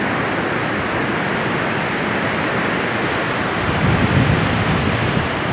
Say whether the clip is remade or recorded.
remade